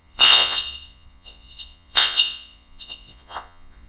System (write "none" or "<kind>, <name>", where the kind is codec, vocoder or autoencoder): vocoder, Vocos